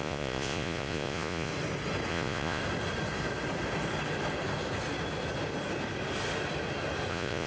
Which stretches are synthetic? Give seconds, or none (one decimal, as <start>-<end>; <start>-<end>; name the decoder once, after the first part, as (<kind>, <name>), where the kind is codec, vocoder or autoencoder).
0.0-1.5 (vocoder, Vocos); 2.1-2.6; 7.1-7.5

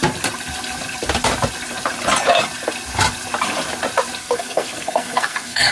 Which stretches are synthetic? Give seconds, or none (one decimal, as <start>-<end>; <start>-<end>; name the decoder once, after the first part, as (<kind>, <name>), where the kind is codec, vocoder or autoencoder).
4.2-5.7 (codec, SNAC)